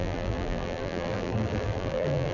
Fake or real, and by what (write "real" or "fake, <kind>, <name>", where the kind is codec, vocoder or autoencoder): fake, vocoder, BigVGAN v2